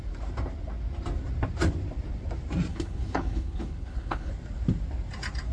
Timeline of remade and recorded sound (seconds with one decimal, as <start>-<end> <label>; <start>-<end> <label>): 0.0-2.7 recorded; 2.7-4.3 remade; 4.3-5.5 recorded